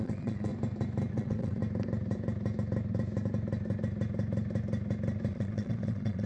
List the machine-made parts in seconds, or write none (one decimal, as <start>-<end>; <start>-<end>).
0.0-0.5; 1.1-1.6; 5.3-6.3